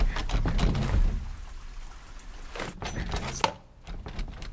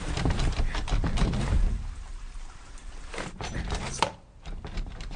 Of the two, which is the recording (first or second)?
first